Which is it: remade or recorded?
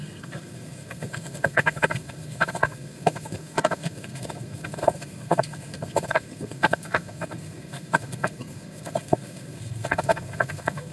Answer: remade